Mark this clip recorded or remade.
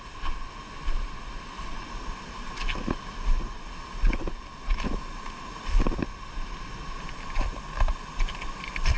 recorded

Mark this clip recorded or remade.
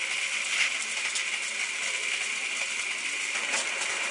recorded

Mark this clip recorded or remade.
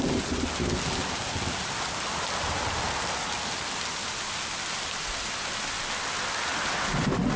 recorded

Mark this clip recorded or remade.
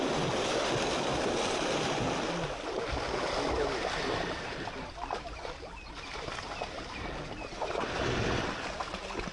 recorded